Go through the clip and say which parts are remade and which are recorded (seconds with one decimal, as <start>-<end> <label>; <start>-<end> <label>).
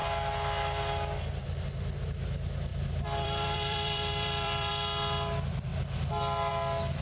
0.0-2.7 recorded; 2.7-4.7 remade; 4.7-7.0 recorded